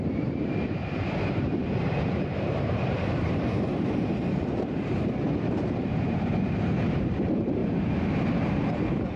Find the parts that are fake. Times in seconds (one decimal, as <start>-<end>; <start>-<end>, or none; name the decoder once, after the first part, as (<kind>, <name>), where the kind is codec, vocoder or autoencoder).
0.0-7.6 (vocoder, BigVGAN v2); 8.3-9.2